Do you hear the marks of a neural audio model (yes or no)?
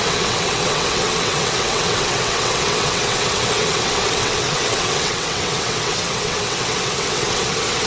yes